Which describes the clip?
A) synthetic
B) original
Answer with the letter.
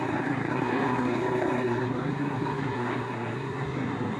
A